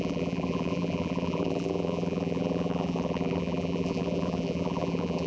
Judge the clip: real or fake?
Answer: fake